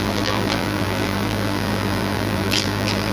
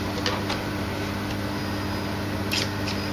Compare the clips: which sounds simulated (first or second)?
first